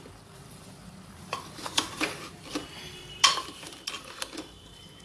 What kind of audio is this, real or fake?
fake